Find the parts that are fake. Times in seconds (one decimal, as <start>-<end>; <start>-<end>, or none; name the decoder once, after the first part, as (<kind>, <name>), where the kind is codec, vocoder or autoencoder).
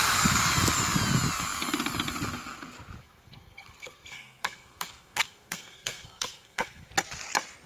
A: 3.0-6.9 (codec, SNAC)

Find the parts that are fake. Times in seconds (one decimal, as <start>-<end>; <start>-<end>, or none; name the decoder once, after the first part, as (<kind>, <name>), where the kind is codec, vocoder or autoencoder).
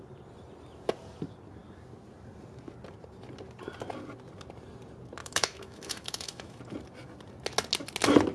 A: 5.2-6.6 (autoencoder, DAC-VAE)